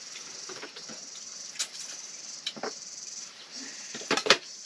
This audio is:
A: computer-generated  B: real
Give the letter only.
A